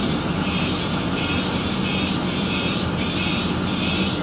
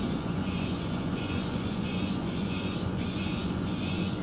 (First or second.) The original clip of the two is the first